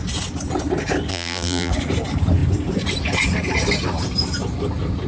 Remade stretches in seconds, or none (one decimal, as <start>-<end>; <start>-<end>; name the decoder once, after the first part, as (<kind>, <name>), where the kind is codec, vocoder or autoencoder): 1.1-1.7 (vocoder, BigVGAN v2)